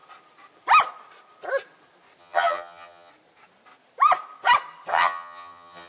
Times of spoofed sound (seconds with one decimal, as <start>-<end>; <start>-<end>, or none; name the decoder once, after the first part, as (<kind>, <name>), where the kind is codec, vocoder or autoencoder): 2.2-3.1 (vocoder, HiFi-GAN); 4.9-5.9